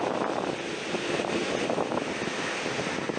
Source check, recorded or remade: recorded